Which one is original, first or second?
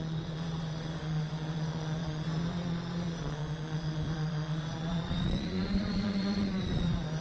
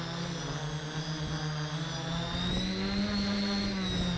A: second